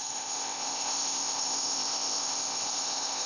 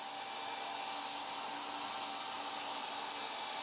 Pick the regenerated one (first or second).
first